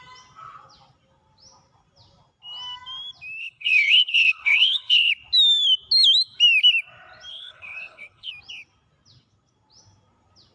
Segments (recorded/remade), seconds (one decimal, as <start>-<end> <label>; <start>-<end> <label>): 0.0-3.4 recorded; 3.4-5.1 remade; 5.1-7.3 recorded; 7.3-8.3 remade; 8.3-10.5 recorded